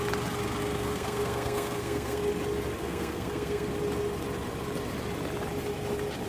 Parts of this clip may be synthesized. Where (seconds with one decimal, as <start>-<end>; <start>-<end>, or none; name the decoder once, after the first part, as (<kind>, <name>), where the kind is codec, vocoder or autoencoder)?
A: 0.6-2.2 (codec, SNAC); 2.8-3.7